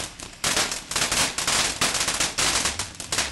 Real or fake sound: real